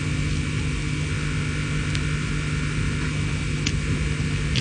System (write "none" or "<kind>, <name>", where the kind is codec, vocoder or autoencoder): none